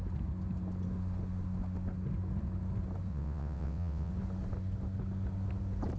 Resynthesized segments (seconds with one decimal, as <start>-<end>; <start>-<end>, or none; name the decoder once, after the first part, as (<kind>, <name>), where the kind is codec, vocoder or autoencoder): 3.1-4.1 (vocoder, WaveNeXt)